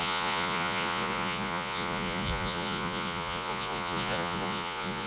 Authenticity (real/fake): fake